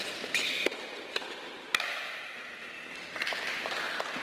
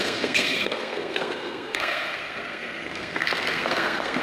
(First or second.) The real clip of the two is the first